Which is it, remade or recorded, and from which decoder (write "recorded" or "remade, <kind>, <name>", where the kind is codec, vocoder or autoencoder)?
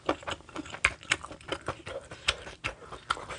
recorded